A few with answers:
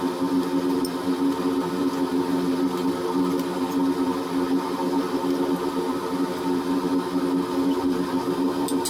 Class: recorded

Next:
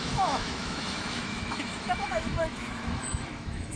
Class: remade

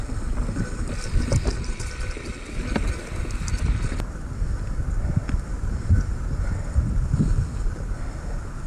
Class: recorded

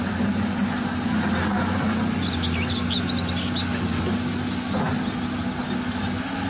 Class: recorded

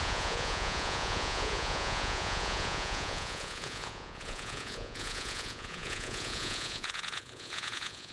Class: remade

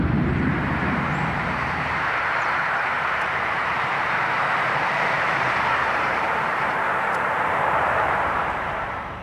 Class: remade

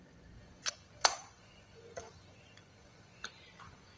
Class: remade